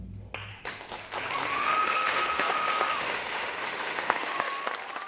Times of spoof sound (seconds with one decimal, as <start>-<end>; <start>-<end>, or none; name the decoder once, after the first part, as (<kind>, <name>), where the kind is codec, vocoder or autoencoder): 0.5-1.0 (autoencoder, DAC-VAE); 1.5-4.6